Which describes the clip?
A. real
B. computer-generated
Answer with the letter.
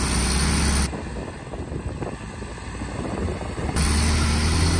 A